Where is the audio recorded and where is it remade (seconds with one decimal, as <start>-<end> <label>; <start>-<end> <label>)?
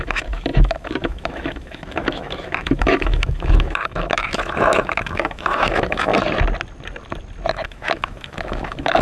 0.0-6.1 remade; 6.1-7.5 recorded; 7.5-9.0 remade